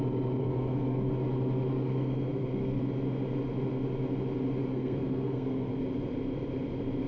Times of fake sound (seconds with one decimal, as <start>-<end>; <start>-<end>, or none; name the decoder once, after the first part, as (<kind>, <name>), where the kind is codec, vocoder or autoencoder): 0.4-1.1 (codec, SNAC); 1.7-2.8; 4.7-5.7